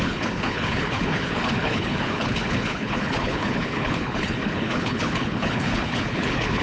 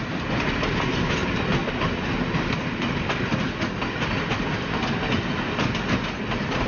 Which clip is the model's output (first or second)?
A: first